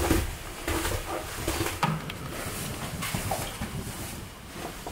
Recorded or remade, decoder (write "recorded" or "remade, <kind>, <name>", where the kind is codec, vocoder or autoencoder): recorded